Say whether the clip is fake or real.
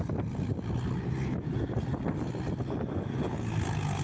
real